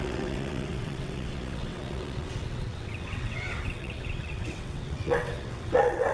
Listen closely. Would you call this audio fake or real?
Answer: fake